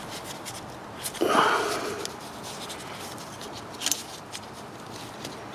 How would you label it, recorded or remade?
recorded